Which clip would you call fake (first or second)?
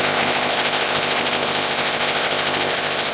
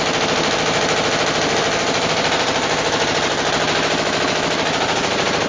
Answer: first